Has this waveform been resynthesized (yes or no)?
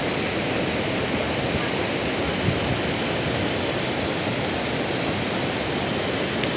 no